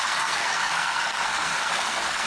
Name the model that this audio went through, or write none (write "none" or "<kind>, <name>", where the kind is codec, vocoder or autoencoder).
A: codec, SNAC